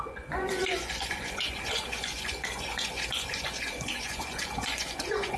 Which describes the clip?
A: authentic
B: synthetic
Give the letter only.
B